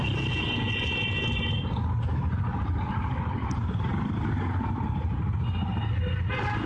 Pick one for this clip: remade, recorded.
recorded